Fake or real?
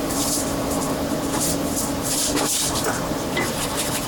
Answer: fake